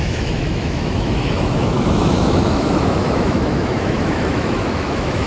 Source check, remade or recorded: remade